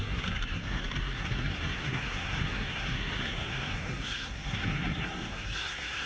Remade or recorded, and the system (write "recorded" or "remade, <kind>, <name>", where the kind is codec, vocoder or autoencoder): remade, codec, SNAC